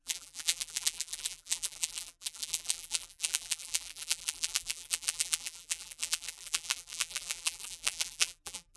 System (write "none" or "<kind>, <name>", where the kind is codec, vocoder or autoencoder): vocoder, BigVGAN v2